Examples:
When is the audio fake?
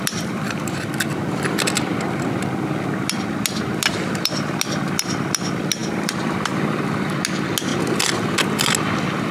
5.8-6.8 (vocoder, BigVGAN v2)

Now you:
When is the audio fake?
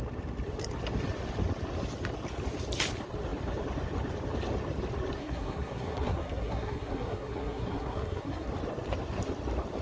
5.2-8.5 (codec, SNAC)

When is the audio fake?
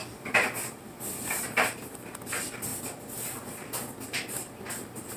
none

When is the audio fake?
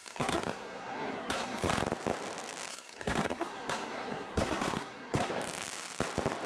0.0-1.7 (codec, SNAC); 2.7-5.3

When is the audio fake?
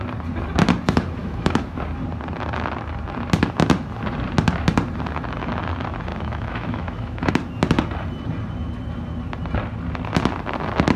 1.2-1.8 (autoencoder, DAC-VAE); 6.1-7.3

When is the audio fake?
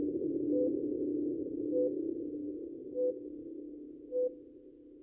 1.1-1.7 (codec, DAC); 2.4-3.9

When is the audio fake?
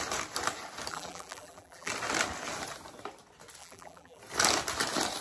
0.9-1.9 (vocoder, BigVGAN v2); 3.6-4.2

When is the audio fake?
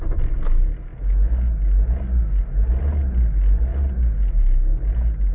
none